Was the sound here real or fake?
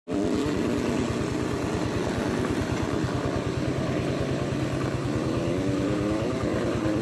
real